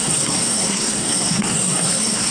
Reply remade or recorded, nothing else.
remade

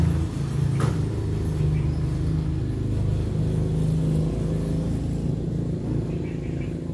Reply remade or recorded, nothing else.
recorded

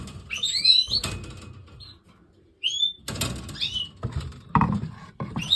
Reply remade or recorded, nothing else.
recorded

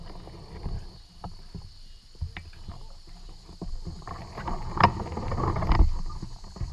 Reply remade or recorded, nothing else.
recorded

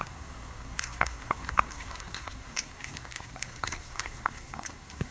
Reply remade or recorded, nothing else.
remade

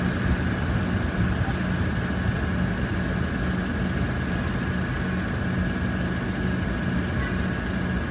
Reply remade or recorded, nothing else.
recorded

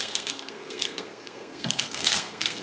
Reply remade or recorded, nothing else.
remade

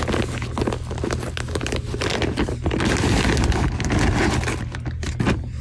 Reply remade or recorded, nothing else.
recorded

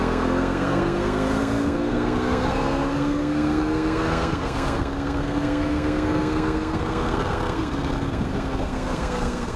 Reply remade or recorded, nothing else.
remade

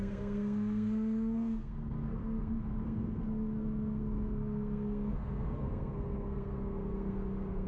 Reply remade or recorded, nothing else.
remade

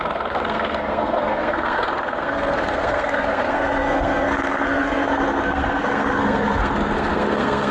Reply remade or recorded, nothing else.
remade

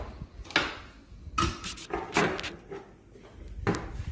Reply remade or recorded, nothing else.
recorded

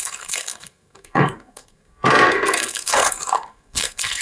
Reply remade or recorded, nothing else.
remade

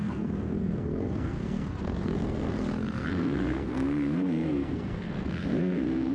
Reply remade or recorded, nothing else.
remade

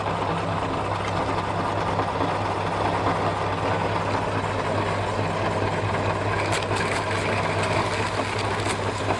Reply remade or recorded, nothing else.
recorded